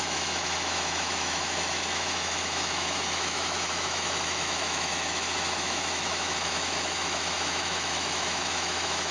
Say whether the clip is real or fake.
fake